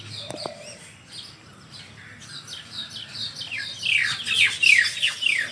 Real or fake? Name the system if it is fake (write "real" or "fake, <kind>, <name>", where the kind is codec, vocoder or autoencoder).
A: real